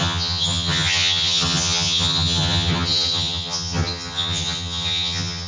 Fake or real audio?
fake